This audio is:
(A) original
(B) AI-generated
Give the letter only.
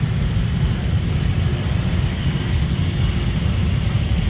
A